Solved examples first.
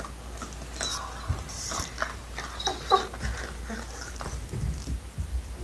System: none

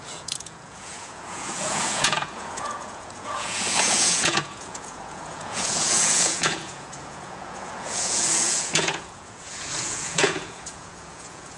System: vocoder, Vocos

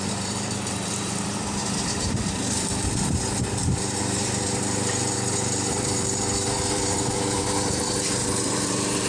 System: vocoder, BigVGAN v2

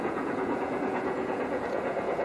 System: vocoder, Vocos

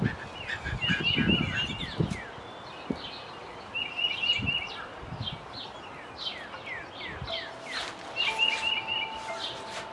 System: none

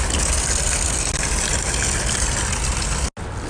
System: none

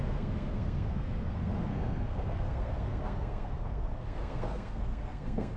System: codec, SNAC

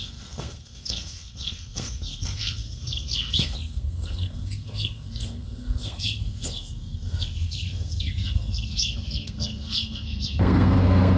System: codec, SNAC